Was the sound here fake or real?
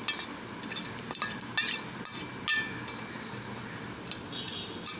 real